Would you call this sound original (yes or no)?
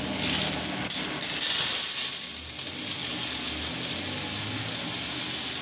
yes